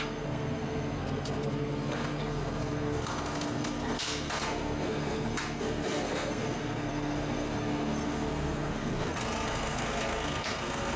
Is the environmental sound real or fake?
fake